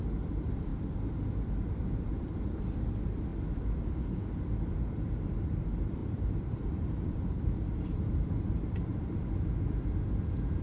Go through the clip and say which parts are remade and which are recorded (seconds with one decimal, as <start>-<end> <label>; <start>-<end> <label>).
0.0-6.0 recorded; 6.0-9.3 remade; 9.3-10.6 recorded